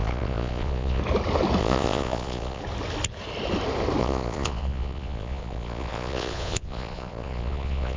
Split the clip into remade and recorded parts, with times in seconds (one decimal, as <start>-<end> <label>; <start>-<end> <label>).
0.0-1.0 remade; 1.0-1.6 recorded; 1.6-2.6 remade; 2.6-4.0 recorded; 4.0-8.0 remade